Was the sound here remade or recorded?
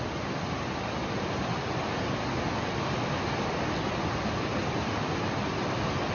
recorded